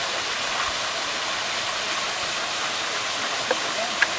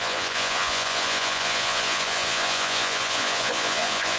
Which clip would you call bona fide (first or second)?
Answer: first